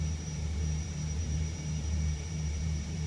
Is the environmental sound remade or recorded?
remade